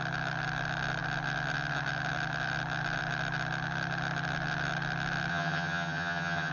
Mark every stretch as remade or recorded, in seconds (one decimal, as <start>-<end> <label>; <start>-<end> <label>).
0.0-5.3 recorded; 5.3-6.5 remade